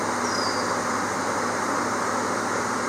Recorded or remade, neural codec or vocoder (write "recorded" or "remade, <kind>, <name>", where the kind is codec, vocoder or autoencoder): recorded